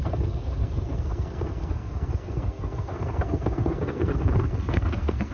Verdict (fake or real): fake